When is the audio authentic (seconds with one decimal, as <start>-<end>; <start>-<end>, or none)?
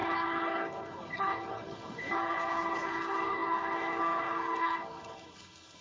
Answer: none